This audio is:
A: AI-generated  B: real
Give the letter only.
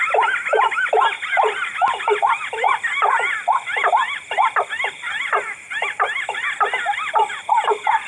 B